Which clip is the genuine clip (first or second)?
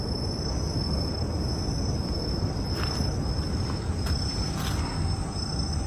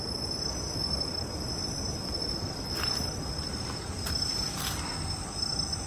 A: first